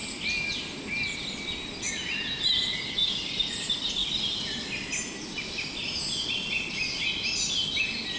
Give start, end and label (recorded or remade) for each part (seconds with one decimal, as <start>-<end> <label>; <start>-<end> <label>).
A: 0.0-8.2 recorded